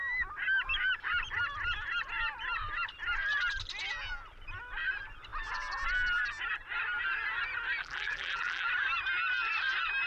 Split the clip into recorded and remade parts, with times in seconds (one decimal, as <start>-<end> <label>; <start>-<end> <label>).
0.0-7.8 recorded; 7.8-8.7 remade; 8.7-10.1 recorded